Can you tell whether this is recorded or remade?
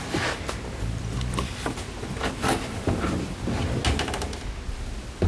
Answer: recorded